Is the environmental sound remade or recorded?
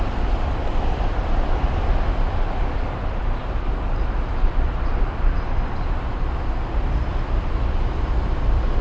remade